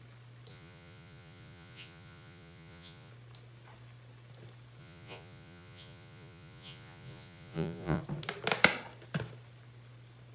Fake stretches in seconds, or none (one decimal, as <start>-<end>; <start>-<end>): 0.5-3.1; 4.8-8.0